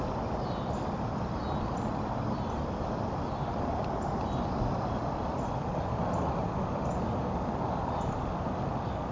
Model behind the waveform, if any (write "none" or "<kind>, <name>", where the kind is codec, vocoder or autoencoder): none